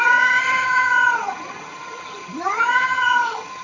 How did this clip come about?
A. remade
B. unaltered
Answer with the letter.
A